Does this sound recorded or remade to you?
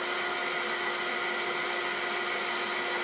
recorded